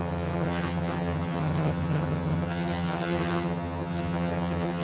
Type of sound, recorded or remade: remade